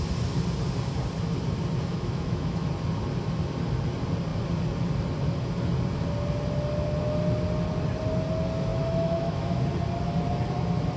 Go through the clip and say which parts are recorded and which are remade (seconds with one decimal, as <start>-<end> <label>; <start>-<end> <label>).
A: 0.0-1.9 recorded; 1.9-2.7 remade; 2.7-8.7 recorded; 8.7-9.6 remade; 9.6-11.0 recorded